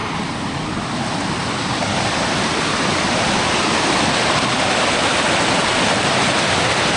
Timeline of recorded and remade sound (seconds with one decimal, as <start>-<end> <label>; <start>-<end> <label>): 0.0-0.7 remade; 0.7-1.4 recorded; 1.4-5.6 remade; 5.6-7.0 recorded